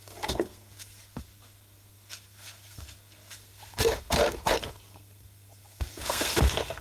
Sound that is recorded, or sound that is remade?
remade